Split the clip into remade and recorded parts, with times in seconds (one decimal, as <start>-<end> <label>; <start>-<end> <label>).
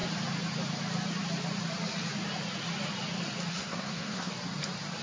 0.0-3.5 recorded; 3.5-4.3 remade; 4.3-5.0 recorded